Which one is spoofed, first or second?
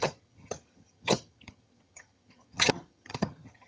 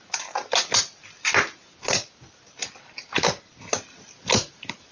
first